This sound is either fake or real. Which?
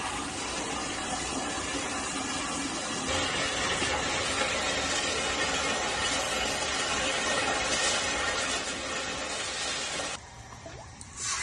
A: real